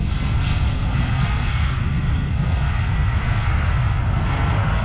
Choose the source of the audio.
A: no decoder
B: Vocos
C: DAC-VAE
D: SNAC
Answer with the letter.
D